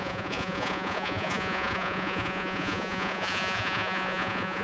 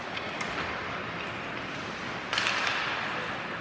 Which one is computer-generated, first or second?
first